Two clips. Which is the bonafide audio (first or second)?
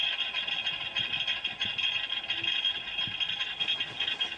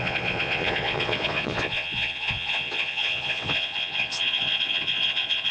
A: first